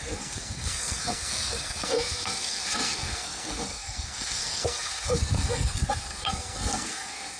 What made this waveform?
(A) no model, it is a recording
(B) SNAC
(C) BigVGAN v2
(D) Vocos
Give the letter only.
B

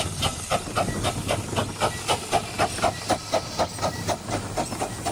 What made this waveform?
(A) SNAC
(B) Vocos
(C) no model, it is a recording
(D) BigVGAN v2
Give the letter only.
C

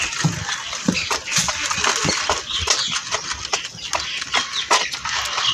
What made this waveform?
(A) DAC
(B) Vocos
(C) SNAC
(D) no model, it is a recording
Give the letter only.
D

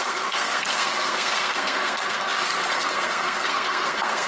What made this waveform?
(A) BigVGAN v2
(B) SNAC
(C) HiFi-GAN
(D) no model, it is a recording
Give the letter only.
B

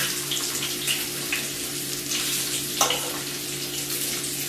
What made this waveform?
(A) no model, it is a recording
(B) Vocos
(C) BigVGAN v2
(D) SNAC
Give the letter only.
A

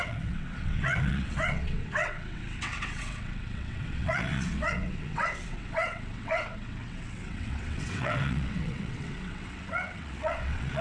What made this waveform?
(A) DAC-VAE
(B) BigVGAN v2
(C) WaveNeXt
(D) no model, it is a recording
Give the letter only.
C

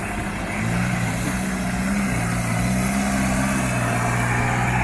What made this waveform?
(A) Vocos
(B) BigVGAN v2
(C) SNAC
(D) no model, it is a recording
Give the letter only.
D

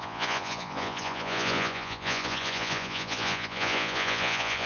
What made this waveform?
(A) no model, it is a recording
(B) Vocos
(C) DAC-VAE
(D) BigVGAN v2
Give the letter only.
B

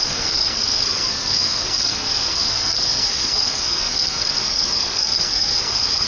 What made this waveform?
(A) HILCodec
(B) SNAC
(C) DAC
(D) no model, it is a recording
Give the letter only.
B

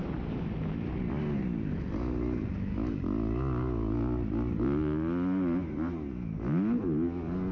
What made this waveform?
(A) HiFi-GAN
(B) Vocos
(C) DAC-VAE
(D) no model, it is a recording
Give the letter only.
D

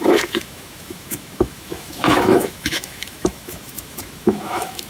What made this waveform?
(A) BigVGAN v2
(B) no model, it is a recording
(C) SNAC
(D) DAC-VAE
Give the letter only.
D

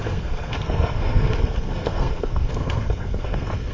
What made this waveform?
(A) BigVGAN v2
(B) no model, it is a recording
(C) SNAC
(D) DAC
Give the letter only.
C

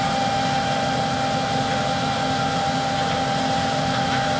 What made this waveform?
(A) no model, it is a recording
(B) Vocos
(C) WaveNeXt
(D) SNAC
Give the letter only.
A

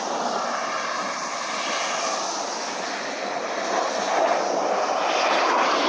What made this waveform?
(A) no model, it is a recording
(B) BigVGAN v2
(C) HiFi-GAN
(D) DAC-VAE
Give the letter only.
A